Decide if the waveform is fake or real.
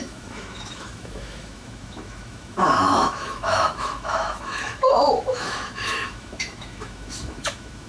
fake